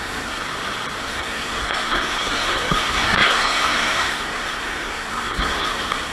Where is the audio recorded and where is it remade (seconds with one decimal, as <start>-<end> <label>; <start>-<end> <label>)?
0.0-0.4 remade; 0.4-1.0 recorded; 1.0-6.1 remade